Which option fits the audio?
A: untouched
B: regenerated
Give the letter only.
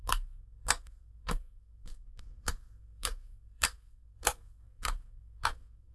B